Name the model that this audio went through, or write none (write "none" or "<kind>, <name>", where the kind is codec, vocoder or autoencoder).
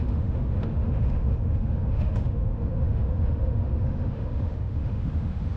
autoencoder, DAC-VAE